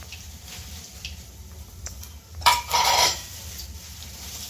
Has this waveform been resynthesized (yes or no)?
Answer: yes